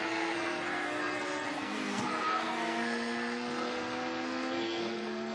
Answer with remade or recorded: remade